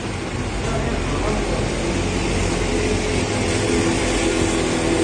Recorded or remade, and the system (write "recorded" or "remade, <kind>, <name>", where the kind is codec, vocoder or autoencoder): recorded